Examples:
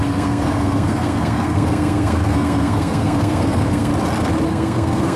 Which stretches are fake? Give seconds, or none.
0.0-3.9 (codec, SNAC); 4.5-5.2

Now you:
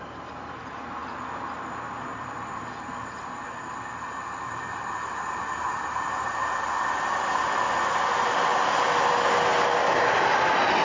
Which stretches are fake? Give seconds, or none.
2.1-7.4 (vocoder, BigVGAN v2)